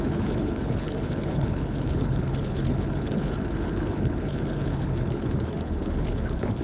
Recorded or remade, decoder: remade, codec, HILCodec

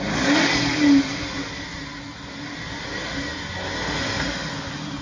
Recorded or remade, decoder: recorded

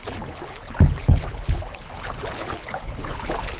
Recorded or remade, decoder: remade, codec, HILCodec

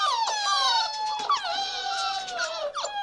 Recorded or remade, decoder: recorded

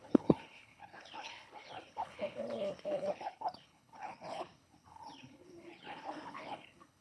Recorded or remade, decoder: remade, codec, HILCodec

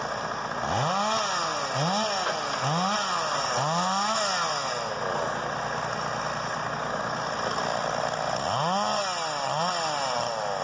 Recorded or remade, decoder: recorded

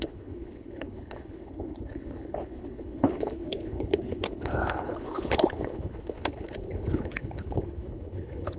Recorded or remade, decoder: remade, codec, HILCodec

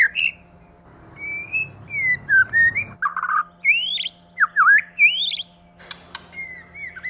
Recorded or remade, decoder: recorded